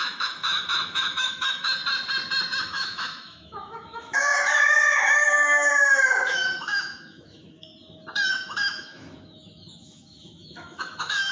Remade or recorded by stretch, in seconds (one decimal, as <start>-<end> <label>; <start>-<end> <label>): 0.0-1.8 remade; 1.8-2.6 recorded; 2.6-7.7 remade; 7.7-8.3 recorded; 8.3-11.3 remade